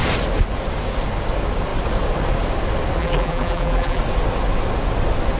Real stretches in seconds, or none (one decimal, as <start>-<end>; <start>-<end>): 0.0-3.0; 4.0-5.4